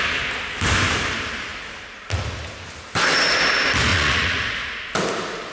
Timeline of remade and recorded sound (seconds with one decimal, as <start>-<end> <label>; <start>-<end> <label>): 0.0-3.9 recorded; 3.9-4.8 remade; 4.8-5.5 recorded